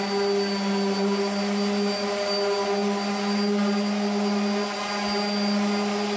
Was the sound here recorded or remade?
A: recorded